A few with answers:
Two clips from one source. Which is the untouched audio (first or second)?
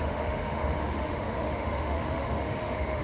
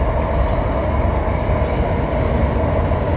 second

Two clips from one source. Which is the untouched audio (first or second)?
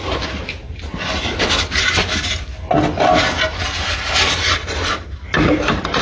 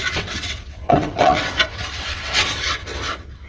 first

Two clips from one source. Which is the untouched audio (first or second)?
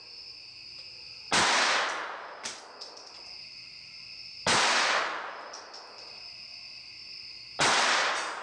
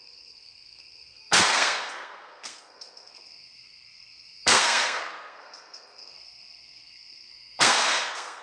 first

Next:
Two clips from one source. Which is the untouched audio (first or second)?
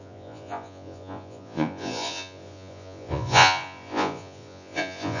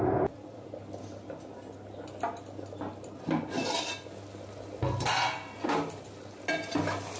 second